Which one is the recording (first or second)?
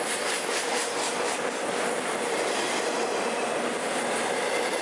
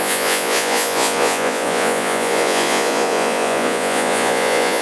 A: first